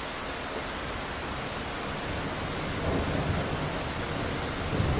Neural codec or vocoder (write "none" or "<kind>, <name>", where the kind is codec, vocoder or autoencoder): none